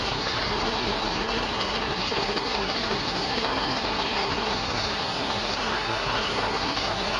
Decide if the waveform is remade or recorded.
remade